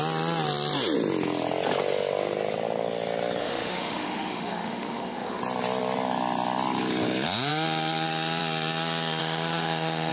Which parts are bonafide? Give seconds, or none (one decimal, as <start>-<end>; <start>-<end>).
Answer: 0.0-3.4; 5.4-9.2